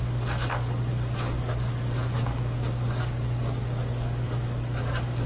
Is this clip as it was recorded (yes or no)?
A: no